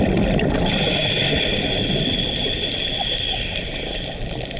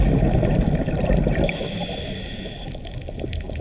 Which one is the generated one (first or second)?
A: first